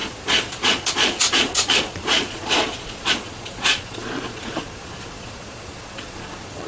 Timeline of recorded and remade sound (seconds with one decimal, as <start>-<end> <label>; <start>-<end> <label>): 0.0-6.7 remade